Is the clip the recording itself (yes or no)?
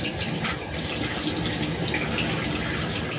yes